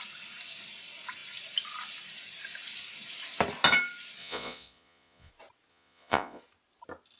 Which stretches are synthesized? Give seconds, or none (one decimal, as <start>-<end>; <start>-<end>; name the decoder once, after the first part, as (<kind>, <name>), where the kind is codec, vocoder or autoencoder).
4.2-5.3 (vocoder, Vocos); 5.7-6.4